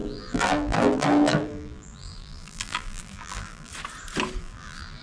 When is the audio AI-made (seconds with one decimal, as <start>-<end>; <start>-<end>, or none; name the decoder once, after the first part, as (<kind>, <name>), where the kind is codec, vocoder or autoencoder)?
0.0-3.7 (vocoder, BigVGAN v2); 4.4-5.0